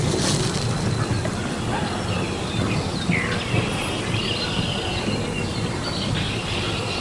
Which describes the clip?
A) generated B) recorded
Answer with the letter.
B